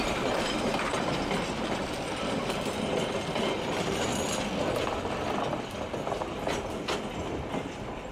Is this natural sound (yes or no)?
yes